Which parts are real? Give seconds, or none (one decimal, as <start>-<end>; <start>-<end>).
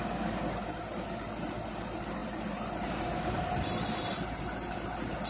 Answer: 0.0-5.3